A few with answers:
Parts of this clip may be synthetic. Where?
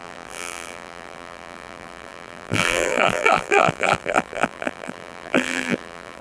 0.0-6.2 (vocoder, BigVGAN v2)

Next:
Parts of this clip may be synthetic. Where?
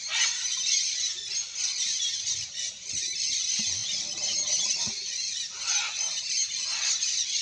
none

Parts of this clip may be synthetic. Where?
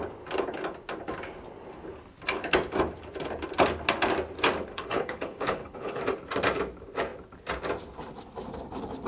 4.7-6.0 (codec, HILCodec)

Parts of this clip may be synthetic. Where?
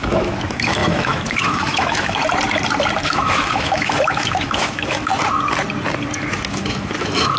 0.0-2.2 (autoencoder, DAC-VAE); 3.0-5.1; 6.5-7.4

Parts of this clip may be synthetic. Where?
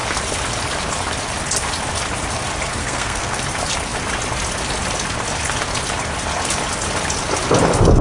2.8-3.4 (codec, SNAC)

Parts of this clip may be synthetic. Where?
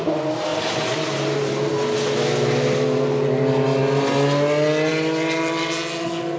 none